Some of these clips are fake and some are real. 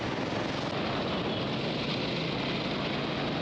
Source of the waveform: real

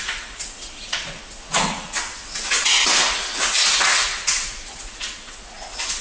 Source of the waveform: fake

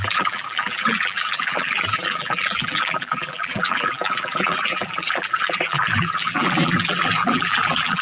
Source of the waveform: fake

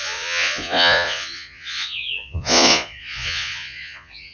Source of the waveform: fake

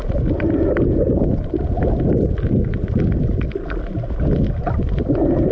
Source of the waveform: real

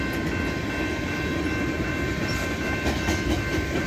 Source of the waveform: real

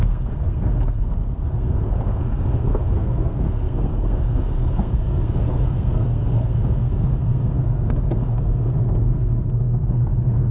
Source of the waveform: fake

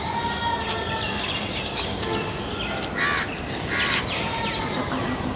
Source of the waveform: real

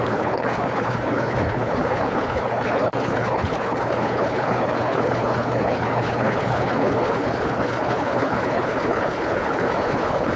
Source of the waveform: fake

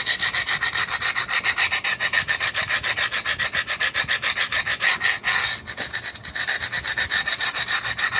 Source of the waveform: real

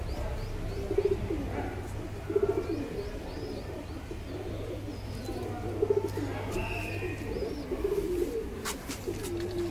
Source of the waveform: real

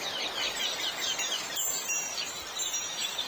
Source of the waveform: fake